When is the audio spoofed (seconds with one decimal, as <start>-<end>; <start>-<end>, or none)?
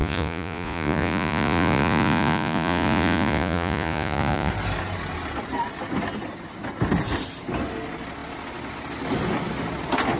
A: 0.0-4.5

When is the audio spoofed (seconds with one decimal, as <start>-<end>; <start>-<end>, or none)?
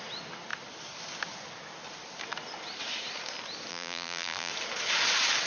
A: 3.7-4.5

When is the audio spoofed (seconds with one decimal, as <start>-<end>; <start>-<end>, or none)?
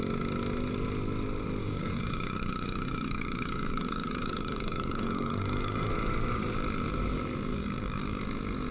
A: 1.6-5.9; 7.5-8.2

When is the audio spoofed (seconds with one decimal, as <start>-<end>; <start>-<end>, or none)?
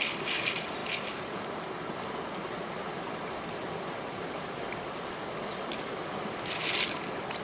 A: none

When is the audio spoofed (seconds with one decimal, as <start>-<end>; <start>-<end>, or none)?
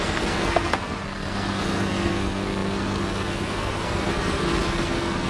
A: 0.0-5.3